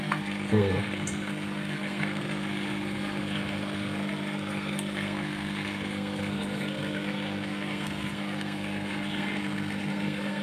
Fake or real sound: fake